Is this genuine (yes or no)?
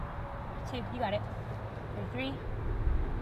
yes